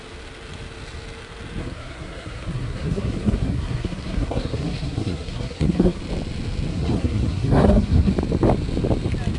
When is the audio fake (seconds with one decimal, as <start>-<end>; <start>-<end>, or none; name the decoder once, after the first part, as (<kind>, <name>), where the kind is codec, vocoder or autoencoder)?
1.6-6.0 (codec, SNAC); 6.7-8.1